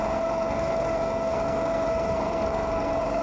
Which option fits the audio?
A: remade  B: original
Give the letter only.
A